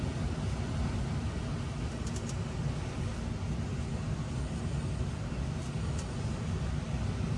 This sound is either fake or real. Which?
real